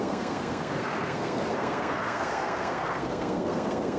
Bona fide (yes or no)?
no